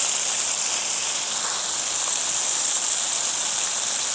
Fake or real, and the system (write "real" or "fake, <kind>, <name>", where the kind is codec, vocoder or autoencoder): real